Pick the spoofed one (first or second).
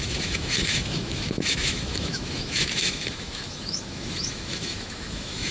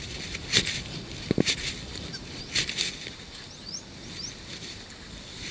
first